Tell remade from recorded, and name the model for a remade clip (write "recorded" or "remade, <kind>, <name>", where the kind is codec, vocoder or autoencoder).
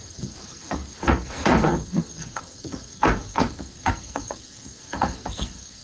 remade, codec, SNAC